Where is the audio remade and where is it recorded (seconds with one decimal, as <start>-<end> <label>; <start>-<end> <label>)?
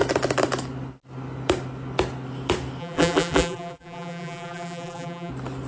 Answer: 0.0-2.8 recorded; 2.8-5.3 remade; 5.3-5.7 recorded